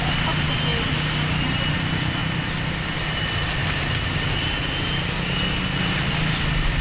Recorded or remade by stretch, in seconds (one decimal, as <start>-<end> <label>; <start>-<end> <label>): 0.0-6.8 recorded